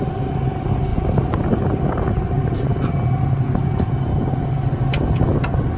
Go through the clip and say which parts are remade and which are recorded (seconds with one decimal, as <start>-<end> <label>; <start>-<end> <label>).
0.0-0.9 recorded; 0.9-3.9 remade; 3.9-5.8 recorded